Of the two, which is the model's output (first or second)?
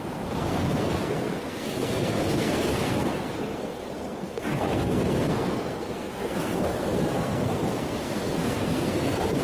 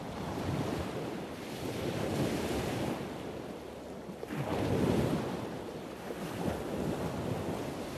first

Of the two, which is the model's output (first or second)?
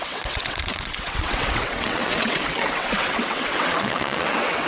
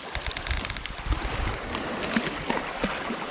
first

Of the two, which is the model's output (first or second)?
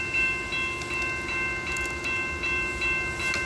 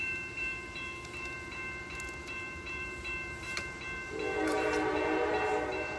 second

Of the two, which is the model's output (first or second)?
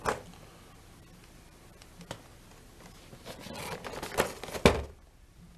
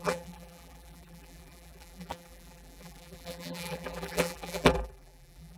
second